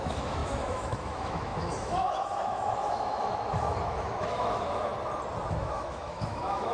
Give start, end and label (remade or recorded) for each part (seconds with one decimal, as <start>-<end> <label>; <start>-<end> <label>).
0.0-4.9 remade; 4.9-5.5 recorded; 5.5-6.7 remade